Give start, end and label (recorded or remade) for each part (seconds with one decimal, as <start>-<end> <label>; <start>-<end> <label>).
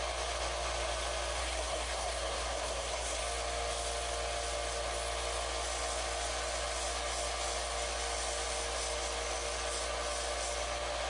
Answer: 0.0-1.4 recorded; 1.4-3.2 remade; 3.2-11.1 recorded